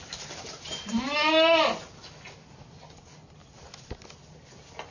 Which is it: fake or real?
real